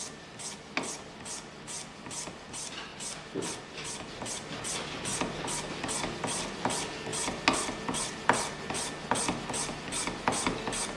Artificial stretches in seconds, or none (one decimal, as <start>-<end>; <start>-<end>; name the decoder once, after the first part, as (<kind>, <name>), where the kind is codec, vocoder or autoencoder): none